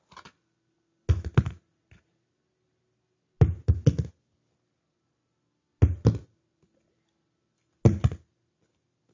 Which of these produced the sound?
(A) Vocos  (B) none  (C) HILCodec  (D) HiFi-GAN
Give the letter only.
B